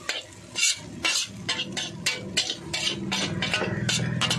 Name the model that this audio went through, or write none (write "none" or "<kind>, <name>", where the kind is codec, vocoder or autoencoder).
none